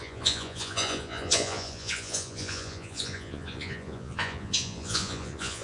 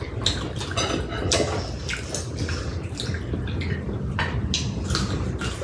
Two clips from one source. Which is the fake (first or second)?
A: first